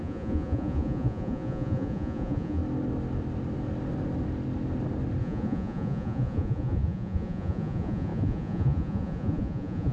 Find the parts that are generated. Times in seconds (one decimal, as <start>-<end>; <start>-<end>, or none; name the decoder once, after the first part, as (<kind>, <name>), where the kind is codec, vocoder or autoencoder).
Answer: 0.0-2.6 (vocoder, Vocos); 5.2-9.9